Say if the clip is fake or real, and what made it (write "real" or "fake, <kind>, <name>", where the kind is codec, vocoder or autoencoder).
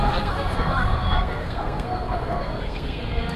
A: fake, codec, SNAC